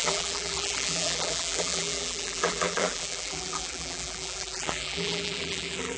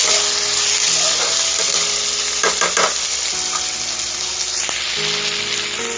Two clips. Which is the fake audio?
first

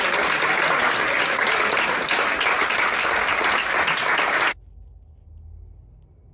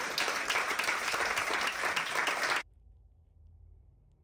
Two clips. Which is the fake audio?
second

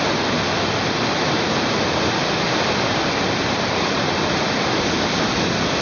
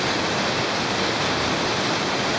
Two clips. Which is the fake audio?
first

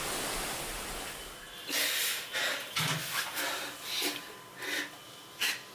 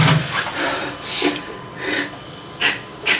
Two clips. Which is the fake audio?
second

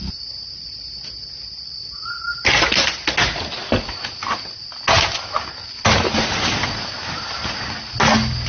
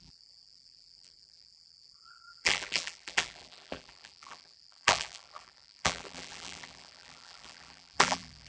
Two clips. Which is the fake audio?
second